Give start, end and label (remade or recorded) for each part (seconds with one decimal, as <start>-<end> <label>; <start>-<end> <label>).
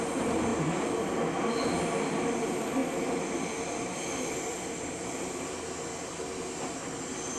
0.0-7.4 recorded